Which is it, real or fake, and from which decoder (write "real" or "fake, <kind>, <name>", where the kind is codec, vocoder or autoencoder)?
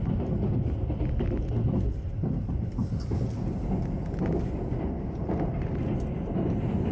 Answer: real